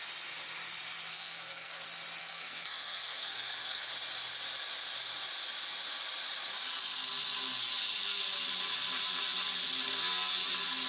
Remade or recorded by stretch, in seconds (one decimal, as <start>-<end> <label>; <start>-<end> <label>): 0.0-1.1 recorded; 1.1-1.8 remade; 1.8-2.2 recorded; 2.2-3.9 remade; 3.9-10.9 recorded